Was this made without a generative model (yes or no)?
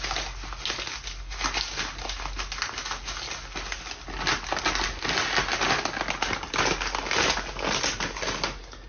yes